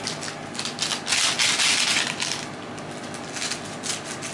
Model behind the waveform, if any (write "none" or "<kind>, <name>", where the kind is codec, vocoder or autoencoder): none